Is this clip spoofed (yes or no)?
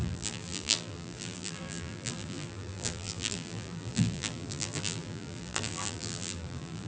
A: yes